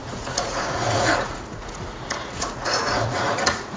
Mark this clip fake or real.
fake